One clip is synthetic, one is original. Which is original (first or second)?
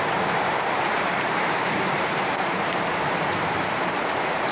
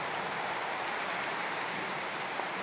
second